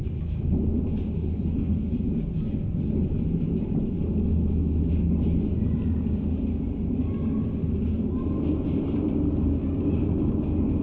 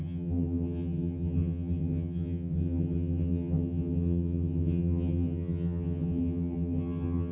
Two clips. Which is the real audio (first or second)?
first